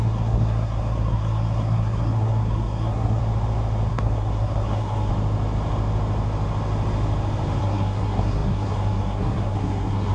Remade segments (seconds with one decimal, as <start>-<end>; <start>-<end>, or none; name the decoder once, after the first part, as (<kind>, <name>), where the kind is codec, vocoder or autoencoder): 0.0-3.2 (codec, SNAC); 3.9-5.1; 7.6-10.1